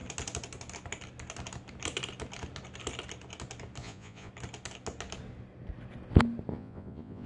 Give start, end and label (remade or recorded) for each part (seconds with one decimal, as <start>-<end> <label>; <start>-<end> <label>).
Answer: 0.0-3.8 recorded; 3.8-4.3 remade; 4.3-6.5 recorded; 6.5-7.3 remade